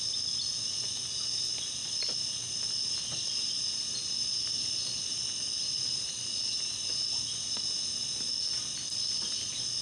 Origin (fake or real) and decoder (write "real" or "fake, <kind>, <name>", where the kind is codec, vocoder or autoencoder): real